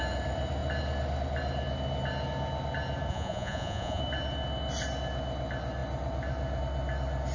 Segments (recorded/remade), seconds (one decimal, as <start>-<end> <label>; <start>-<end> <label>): 0.0-3.1 recorded; 3.1-4.0 remade; 4.0-7.3 recorded

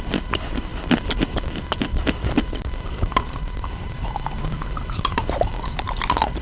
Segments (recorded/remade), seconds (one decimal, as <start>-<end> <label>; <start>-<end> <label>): 0.0-0.7 remade; 0.7-1.3 recorded; 1.3-6.4 remade

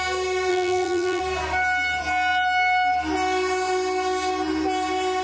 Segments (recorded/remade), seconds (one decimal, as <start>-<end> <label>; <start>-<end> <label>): 0.0-0.5 recorded; 0.5-1.2 remade; 1.2-5.2 recorded